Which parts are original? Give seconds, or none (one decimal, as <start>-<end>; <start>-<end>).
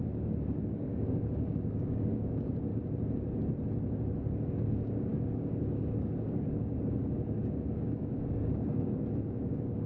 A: 2.7-4.5